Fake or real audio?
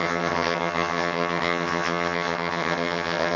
fake